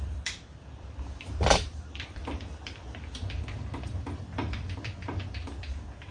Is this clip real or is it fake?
fake